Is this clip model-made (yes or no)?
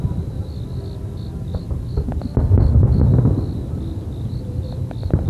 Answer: no